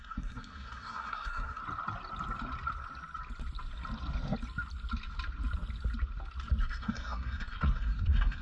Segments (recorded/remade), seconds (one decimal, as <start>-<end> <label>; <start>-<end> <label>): 0.0-1.6 remade; 1.6-6.6 recorded; 6.6-8.4 remade